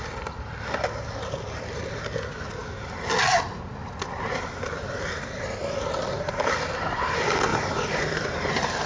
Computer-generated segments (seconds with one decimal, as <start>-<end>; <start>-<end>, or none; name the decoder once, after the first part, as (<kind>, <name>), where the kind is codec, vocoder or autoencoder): 7.5-8.9 (vocoder, BigVGAN v2)